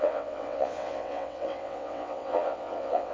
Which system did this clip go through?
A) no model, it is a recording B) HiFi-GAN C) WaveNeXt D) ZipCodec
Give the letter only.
C